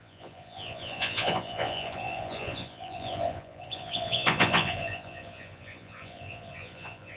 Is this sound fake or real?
fake